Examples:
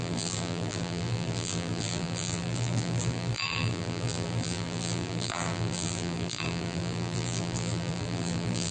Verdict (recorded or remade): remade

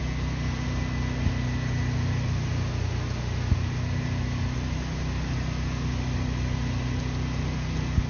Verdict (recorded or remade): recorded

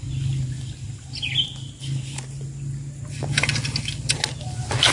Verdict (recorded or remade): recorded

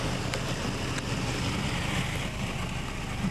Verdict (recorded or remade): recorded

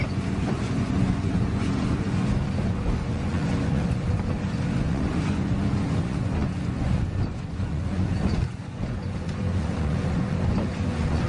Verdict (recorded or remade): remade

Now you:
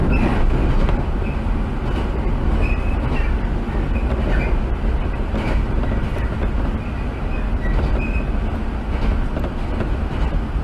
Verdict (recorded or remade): recorded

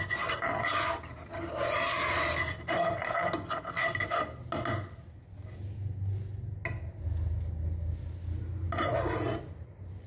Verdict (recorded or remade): recorded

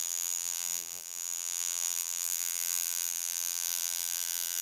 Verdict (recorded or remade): remade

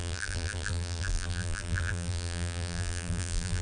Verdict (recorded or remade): remade